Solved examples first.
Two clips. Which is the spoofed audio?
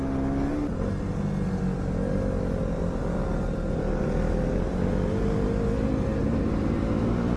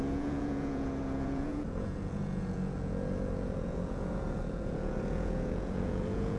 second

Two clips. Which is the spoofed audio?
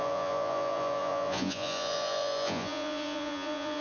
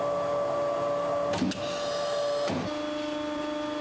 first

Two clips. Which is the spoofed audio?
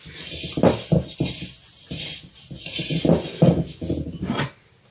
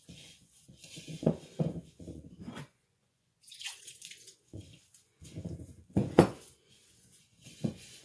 second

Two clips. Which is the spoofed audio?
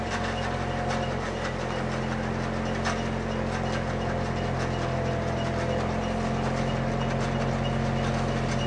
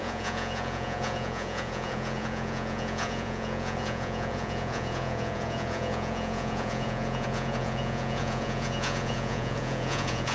second